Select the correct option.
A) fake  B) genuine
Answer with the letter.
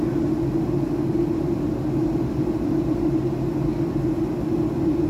B